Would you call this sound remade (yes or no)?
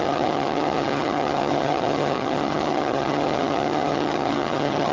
yes